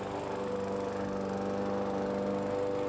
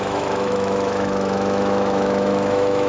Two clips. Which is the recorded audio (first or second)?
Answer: first